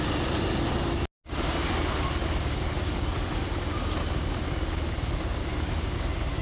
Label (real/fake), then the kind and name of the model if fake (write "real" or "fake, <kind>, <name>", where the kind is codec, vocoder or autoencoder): real